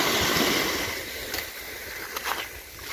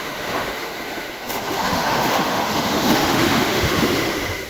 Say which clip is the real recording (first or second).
first